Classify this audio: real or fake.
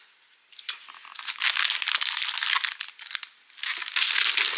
real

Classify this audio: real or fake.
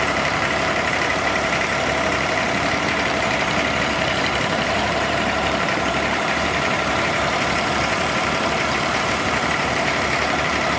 fake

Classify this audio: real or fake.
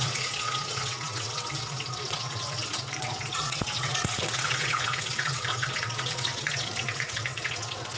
fake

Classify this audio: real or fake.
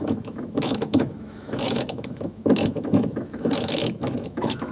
fake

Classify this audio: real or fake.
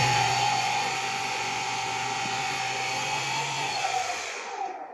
fake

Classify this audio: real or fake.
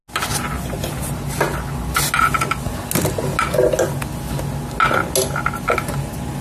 real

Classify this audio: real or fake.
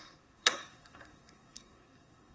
fake